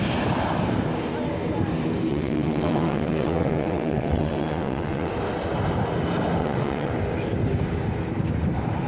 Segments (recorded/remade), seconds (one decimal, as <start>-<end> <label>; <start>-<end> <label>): 0.0-2.1 recorded; 2.1-5.1 remade; 5.1-6.4 recorded; 6.4-6.9 remade; 6.9-8.9 recorded